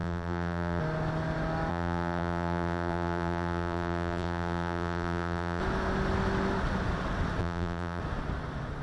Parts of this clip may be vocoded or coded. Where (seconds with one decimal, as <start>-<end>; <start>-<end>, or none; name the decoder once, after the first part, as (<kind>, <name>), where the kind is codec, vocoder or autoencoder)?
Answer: 0.0-0.8 (vocoder, BigVGAN v2); 1.7-5.6; 7.4-8.0